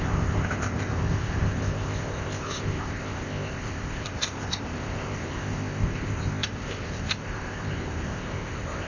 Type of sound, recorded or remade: remade